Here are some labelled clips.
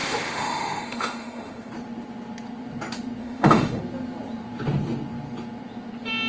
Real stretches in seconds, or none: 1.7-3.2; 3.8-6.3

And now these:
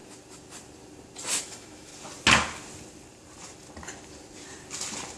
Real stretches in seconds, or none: 0.0-1.4; 1.9-5.2

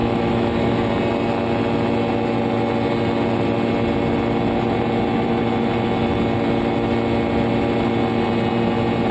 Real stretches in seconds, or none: 0.9-9.1

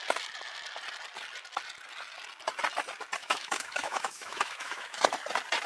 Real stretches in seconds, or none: 0.0-3.2; 5.0-5.7